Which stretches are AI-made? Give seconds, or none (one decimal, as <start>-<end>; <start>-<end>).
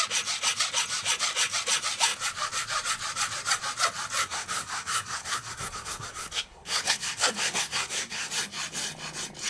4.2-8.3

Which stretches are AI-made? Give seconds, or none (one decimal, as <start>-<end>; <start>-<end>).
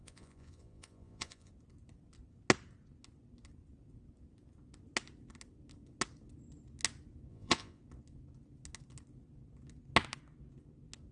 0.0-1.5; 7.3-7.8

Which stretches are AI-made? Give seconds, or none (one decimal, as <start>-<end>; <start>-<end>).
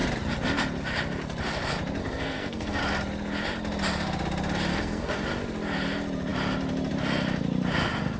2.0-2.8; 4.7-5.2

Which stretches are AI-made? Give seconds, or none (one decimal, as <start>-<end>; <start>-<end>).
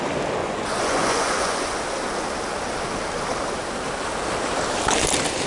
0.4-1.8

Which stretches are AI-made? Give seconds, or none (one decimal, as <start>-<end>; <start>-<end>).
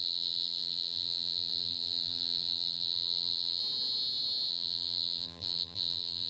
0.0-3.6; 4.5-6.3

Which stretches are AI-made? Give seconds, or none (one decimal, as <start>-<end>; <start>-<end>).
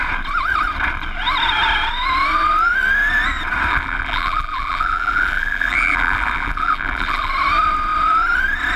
3.7-7.3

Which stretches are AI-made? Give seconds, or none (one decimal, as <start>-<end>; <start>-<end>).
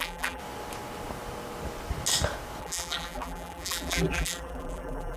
0.0-0.4; 2.6-5.2